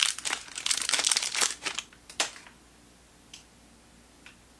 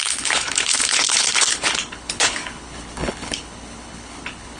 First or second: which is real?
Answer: first